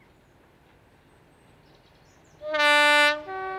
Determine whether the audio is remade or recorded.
recorded